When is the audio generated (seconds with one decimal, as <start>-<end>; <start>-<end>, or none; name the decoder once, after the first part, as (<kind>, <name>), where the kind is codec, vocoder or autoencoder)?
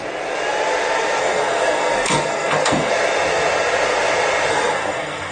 1.2-2.9 (codec, SNAC); 4.5-5.3